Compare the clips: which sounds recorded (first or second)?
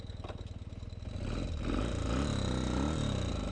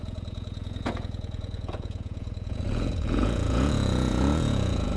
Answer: first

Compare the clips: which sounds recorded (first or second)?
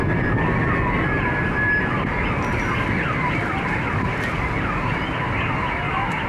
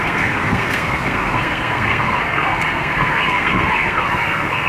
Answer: first